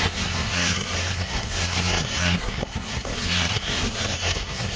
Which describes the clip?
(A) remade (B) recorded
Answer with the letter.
A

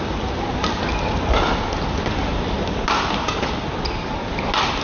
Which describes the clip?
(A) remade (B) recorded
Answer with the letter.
B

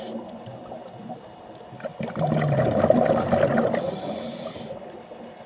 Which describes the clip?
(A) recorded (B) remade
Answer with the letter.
A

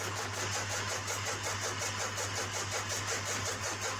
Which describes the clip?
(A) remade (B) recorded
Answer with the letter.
B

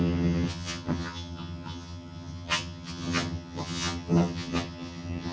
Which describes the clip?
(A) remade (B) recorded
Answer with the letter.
A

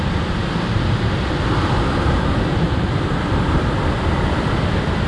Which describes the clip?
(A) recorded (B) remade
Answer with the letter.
A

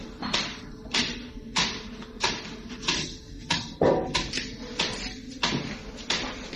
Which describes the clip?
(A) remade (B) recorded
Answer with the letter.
B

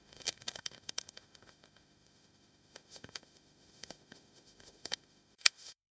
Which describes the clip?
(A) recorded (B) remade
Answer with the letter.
B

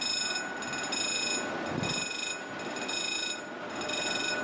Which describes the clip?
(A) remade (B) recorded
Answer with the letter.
B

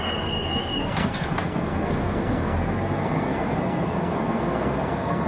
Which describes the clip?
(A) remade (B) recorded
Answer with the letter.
A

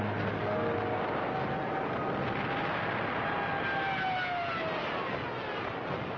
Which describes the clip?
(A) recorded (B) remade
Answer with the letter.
A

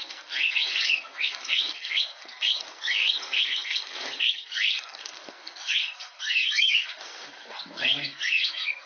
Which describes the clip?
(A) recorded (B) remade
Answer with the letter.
B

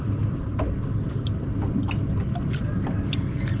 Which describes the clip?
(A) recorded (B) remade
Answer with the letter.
A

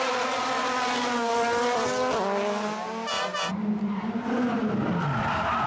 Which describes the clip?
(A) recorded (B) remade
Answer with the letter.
A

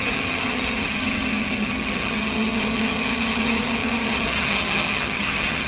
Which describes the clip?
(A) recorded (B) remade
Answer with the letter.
B